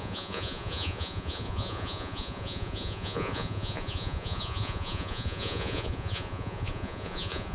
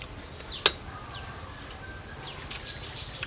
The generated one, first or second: first